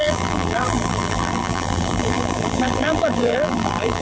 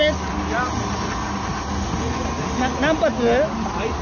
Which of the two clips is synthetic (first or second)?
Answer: first